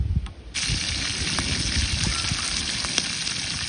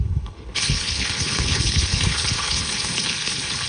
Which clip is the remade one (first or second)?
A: second